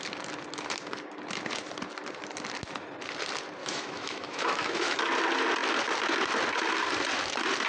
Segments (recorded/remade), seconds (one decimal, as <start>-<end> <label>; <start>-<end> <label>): 0.0-3.6 recorded; 3.6-5.0 remade; 5.0-7.7 recorded